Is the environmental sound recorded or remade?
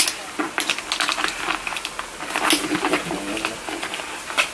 recorded